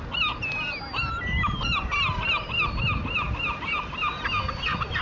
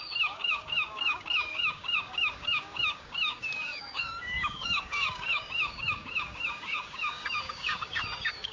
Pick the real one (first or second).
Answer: first